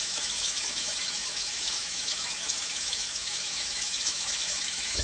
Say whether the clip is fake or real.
fake